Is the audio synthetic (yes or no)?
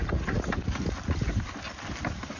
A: no